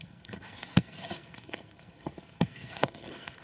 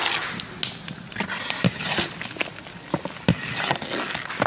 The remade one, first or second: first